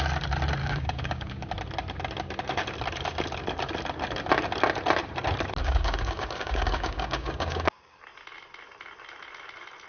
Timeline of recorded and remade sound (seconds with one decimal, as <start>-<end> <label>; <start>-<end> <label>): 0.0-0.6 recorded; 0.6-1.5 remade; 1.5-5.6 recorded; 5.6-8.0 remade; 8.0-9.9 recorded